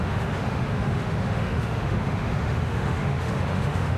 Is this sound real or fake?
fake